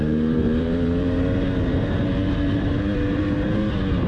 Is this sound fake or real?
fake